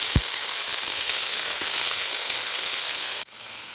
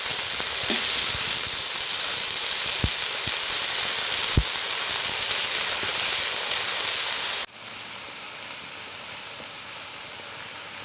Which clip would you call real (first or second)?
second